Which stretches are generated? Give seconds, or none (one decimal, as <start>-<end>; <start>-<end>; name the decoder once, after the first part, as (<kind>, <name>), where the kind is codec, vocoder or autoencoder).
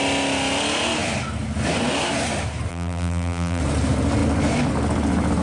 2.7-3.6 (vocoder, BigVGAN v2)